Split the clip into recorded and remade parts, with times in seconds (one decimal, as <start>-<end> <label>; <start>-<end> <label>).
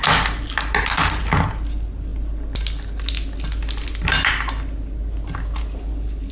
0.0-6.3 recorded